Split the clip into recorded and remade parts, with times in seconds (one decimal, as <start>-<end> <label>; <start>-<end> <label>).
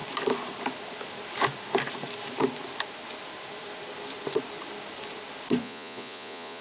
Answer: 0.0-5.6 recorded; 5.6-6.6 remade